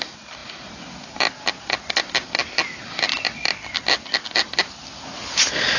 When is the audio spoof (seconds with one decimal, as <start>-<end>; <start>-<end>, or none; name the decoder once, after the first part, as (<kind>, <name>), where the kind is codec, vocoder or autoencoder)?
none